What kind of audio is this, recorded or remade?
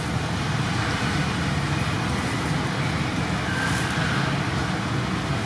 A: recorded